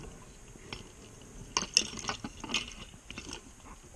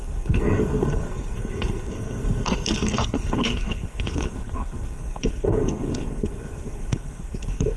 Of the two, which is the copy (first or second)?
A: second